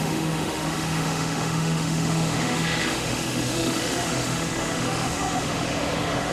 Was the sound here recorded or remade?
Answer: remade